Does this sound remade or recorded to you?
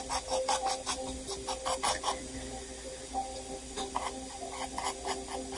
recorded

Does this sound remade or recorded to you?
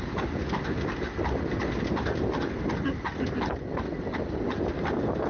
recorded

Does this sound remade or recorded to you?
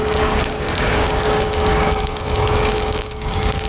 remade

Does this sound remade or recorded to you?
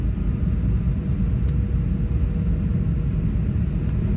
recorded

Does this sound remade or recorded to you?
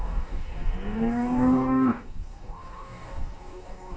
remade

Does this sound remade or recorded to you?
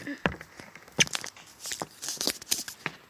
recorded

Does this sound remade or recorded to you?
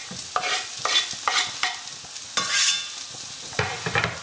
recorded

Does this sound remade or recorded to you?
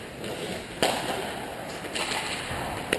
recorded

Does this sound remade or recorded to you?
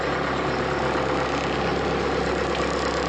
recorded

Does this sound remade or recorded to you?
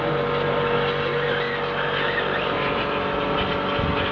recorded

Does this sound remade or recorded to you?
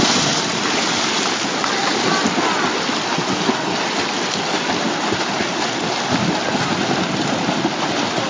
recorded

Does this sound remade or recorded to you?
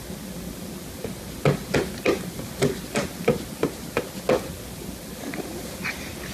recorded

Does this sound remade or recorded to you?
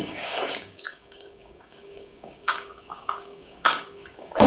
remade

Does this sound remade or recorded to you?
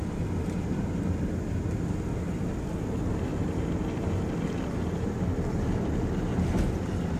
recorded